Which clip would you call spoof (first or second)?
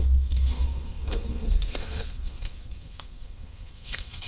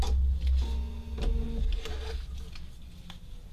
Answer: first